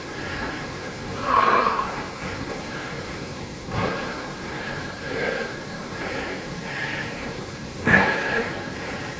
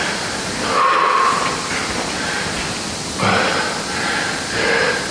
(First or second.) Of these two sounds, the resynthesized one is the first